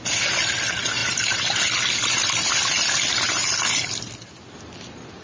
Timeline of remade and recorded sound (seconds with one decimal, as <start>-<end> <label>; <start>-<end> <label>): 0.0-1.0 recorded; 1.0-1.6 remade; 1.6-5.2 recorded